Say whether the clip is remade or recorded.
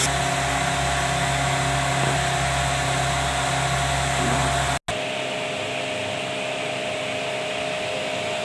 recorded